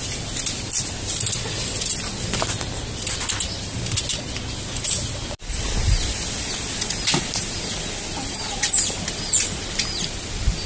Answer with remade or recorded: recorded